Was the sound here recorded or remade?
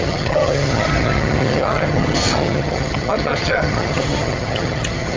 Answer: remade